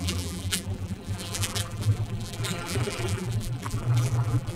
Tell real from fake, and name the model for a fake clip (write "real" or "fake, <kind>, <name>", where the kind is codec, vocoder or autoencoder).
fake, vocoder, BigVGAN v2